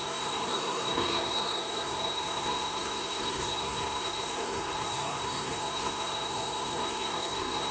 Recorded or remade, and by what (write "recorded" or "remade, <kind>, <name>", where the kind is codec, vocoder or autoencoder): remade, codec, SNAC